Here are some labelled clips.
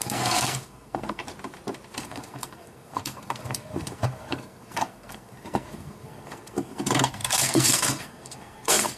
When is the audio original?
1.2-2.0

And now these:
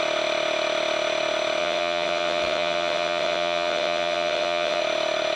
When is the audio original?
0.0-1.6; 4.8-5.4